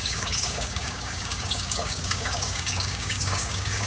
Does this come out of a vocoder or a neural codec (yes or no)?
yes